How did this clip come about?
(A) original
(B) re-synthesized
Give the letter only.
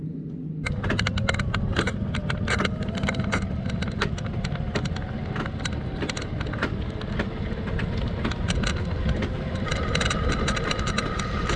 A